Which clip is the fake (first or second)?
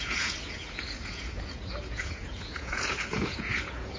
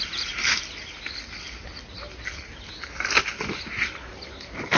first